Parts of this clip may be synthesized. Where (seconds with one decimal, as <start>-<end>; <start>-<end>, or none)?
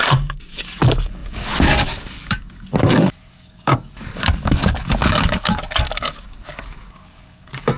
0.0-7.8